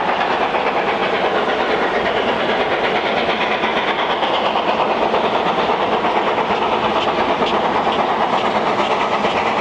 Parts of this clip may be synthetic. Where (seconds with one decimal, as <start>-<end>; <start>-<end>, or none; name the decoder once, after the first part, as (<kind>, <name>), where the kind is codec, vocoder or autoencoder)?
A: 1.0-2.4 (vocoder, BigVGAN v2); 3.7-5.2